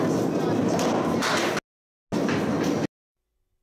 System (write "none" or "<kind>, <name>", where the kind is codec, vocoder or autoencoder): none